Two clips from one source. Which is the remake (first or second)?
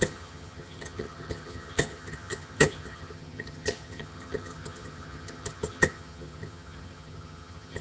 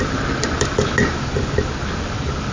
first